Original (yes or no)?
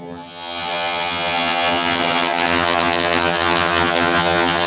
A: no